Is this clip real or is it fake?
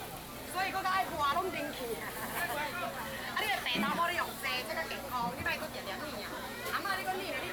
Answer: real